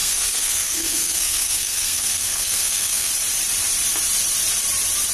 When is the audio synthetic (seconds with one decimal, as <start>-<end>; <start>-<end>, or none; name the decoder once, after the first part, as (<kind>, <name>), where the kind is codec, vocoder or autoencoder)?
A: 0.0-3.1 (codec, SNAC)